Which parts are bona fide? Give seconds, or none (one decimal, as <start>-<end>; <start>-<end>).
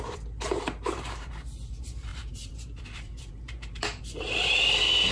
none